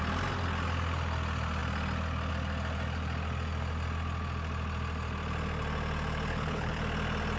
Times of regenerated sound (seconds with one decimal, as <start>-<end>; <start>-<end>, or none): 6.3-6.8